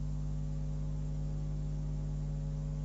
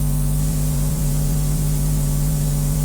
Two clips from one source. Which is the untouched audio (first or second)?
first